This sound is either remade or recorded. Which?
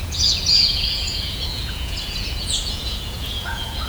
remade